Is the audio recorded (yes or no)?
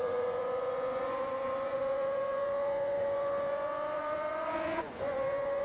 no